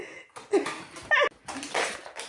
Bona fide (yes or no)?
yes